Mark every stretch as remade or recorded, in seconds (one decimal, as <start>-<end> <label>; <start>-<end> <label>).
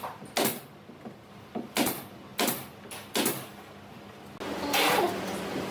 0.0-5.7 recorded